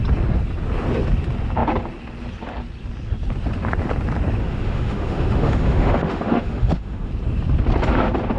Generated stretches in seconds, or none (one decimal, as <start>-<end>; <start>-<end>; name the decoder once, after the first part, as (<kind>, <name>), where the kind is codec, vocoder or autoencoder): 4.4-7.1 (autoencoder, DAC-VAE)